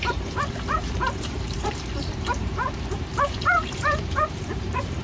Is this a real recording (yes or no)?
no